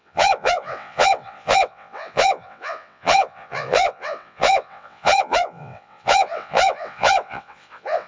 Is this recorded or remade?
remade